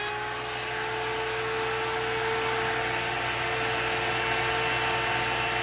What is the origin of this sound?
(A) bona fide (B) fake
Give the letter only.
A